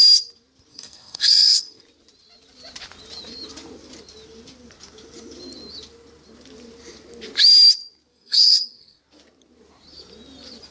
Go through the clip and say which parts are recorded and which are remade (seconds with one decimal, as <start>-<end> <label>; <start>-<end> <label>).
0.0-0.7 recorded; 0.7-1.8 remade; 1.8-8.1 recorded; 8.1-9.0 remade; 9.0-10.7 recorded